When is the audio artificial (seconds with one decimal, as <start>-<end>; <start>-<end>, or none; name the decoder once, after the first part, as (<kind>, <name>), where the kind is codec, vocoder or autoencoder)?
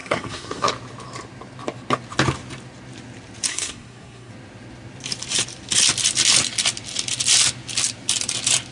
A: 0.0-0.7 (codec, SNAC); 3.5-4.3